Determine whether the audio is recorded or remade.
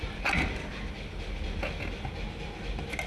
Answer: recorded